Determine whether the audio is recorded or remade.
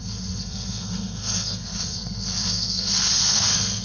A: remade